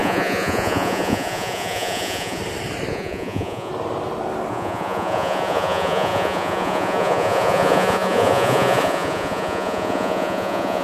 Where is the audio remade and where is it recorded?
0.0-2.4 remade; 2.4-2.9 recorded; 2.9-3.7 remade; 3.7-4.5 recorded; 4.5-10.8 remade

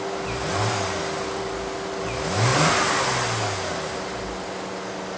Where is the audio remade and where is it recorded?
0.0-5.2 recorded

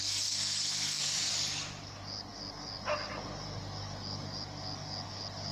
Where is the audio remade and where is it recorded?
0.0-1.0 remade; 1.0-5.5 recorded

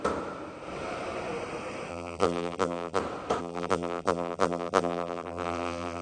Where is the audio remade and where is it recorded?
0.0-1.9 recorded; 1.9-3.0 remade; 3.0-3.4 recorded; 3.4-6.0 remade

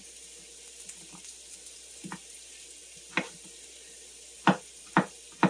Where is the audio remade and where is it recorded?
0.0-5.5 recorded

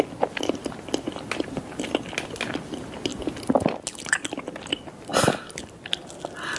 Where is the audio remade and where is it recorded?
0.0-6.6 recorded